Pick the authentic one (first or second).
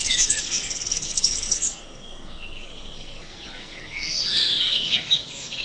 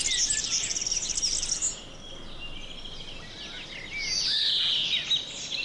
second